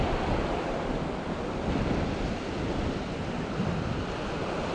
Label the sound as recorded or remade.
recorded